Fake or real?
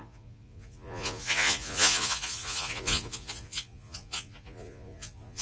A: fake